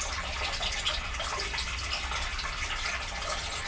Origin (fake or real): real